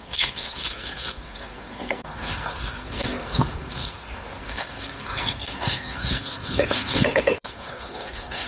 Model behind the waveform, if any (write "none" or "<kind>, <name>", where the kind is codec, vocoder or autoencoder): codec, SNAC